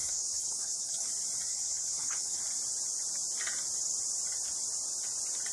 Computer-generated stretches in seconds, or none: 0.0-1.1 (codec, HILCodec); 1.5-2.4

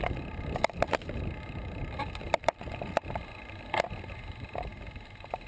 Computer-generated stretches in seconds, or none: 0.0-5.5 (vocoder, BigVGAN v2)

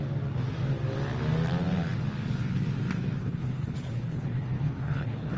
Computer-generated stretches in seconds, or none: 3.2-5.4 (codec, HILCodec)

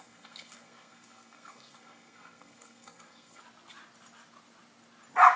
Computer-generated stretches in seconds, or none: 0.0-3.4 (codec, SNAC)

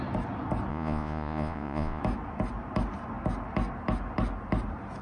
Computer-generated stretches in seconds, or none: 0.7-2.0 (vocoder, Vocos)

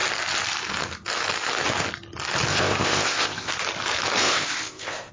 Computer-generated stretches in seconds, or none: 2.5-3.5 (codec, ZipCodec); 4.2-5.1